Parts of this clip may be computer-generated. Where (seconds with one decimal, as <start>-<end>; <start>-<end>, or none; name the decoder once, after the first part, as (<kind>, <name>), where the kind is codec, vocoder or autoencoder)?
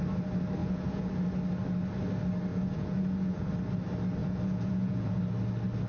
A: 0.6-1.1 (vocoder, Vocos); 2.5-3.5; 4.2-5.2